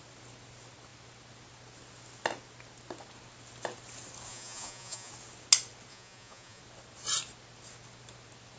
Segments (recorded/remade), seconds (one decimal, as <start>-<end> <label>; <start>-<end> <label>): 0.0-4.3 recorded; 4.3-5.1 remade; 5.1-5.9 recorded; 5.9-6.6 remade; 6.6-8.6 recorded